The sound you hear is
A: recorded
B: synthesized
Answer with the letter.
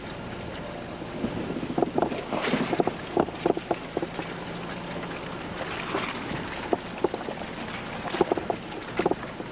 A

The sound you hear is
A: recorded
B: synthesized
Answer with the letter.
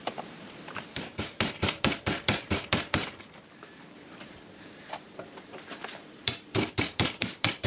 B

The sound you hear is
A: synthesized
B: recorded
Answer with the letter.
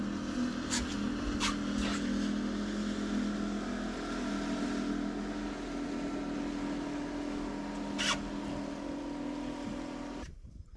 B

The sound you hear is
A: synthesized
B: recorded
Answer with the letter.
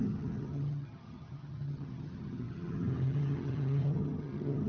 A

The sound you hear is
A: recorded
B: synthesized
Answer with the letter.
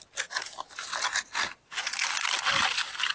A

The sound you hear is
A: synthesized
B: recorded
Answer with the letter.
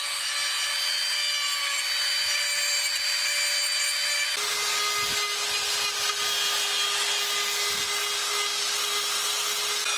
B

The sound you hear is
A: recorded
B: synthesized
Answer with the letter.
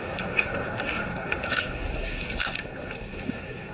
B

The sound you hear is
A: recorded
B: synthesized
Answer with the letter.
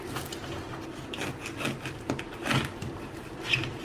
A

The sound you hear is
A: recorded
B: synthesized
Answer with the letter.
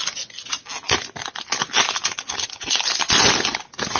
A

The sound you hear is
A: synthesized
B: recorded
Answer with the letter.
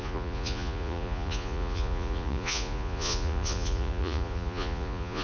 A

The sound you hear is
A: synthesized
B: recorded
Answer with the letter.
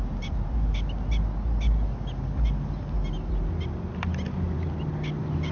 B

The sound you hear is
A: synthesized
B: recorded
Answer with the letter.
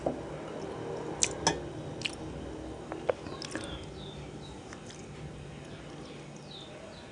B